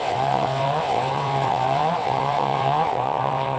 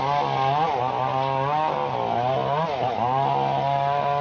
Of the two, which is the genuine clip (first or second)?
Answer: second